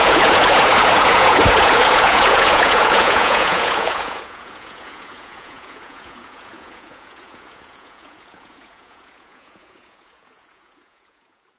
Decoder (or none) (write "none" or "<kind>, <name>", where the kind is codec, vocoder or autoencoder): vocoder, Vocos